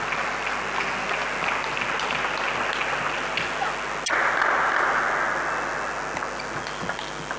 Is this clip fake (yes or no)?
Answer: no